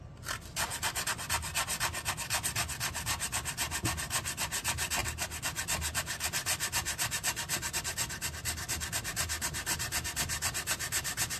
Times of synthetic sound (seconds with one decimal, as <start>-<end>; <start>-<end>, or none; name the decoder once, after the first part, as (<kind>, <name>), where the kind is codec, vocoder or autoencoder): 5.0-7.8 (vocoder, BigVGAN v2)